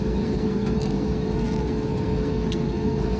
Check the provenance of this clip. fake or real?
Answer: fake